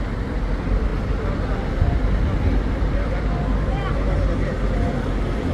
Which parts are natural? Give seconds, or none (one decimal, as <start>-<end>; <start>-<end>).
0.0-5.5